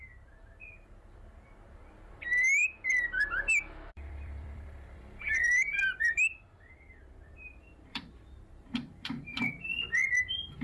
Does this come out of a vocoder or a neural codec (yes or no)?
yes